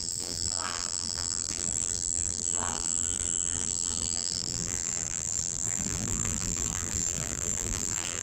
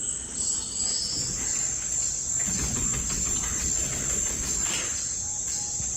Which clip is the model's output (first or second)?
first